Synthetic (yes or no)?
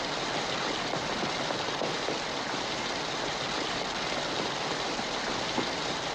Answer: no